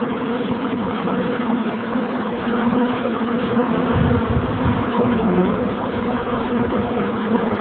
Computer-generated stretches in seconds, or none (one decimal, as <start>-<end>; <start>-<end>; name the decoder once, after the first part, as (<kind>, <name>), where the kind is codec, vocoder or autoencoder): 0.0-3.7 (codec, HILCodec); 4.8-7.6